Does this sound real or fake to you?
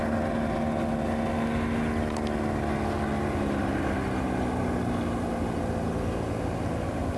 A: real